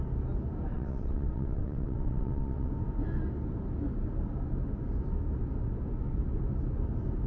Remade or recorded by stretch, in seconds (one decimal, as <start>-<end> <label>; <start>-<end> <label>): 0.0-0.7 recorded; 0.7-2.7 remade; 2.7-7.3 recorded